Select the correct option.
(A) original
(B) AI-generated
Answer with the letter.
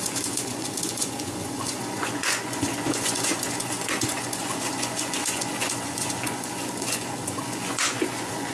B